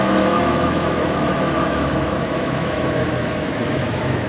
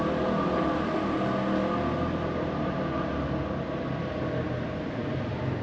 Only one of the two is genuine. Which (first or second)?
second